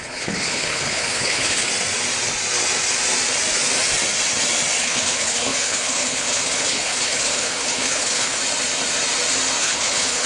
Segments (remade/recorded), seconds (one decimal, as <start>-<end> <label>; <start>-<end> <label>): 0.0-1.7 remade; 1.7-4.8 recorded; 4.8-8.4 remade; 8.4-9.6 recorded; 9.6-10.3 remade